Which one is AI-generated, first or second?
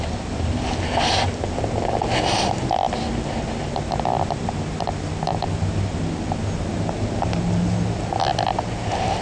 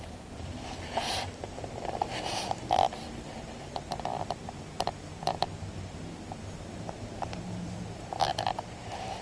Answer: second